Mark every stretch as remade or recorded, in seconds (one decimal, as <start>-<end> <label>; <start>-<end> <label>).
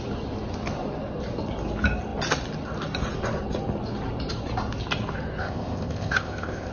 0.0-5.4 recorded; 5.4-6.7 remade